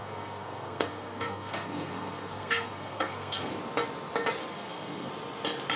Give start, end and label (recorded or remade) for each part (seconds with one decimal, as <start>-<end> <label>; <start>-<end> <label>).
0.0-3.5 remade; 3.5-4.5 recorded; 4.5-5.1 remade; 5.1-5.8 recorded